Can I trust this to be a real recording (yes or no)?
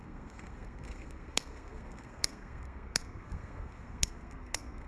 no